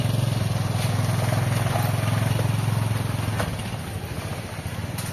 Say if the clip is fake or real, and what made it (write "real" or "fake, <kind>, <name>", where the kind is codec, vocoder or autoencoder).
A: real